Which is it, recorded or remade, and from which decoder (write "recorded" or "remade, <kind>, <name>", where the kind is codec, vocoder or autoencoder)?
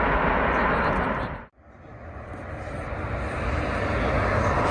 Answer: recorded